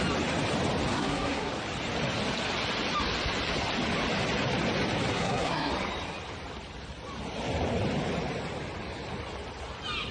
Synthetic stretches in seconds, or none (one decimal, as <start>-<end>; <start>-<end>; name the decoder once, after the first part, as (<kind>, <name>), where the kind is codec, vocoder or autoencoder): 0.9-1.5 (codec, SNAC); 5.1-5.7